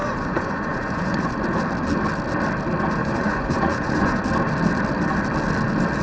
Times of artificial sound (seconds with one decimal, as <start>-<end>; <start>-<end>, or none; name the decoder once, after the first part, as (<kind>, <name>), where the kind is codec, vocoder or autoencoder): 0.0-1.3 (vocoder, Vocos); 3.0-4.2

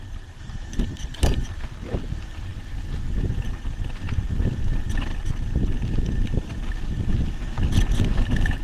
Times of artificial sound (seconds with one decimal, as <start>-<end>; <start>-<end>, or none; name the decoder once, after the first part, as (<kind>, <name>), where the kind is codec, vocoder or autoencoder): none